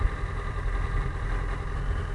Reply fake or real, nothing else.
real